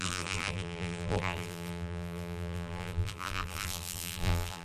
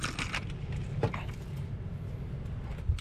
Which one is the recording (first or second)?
second